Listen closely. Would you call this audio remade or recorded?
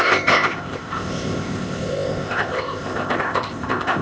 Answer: remade